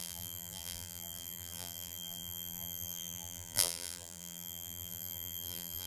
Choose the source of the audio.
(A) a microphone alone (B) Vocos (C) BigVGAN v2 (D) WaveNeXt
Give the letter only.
C